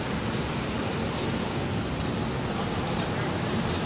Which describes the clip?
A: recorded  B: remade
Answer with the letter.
A